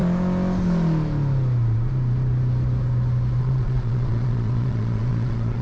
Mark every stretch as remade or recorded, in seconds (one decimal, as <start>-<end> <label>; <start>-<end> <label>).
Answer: 0.0-3.4 recorded; 3.4-5.6 remade